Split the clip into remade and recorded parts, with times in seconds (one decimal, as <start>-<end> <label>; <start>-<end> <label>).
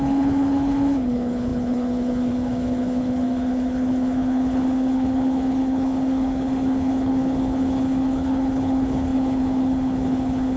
0.0-10.6 remade